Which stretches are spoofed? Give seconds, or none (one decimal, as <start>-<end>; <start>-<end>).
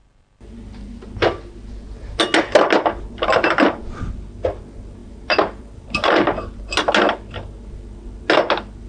5.0-6.4